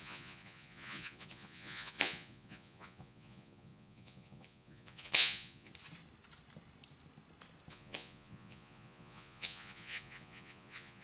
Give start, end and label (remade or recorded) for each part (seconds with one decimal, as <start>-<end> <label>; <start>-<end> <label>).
0.0-5.7 remade; 5.7-7.7 recorded; 7.7-11.0 remade